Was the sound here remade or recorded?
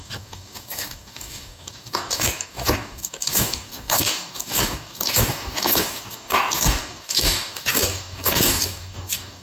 remade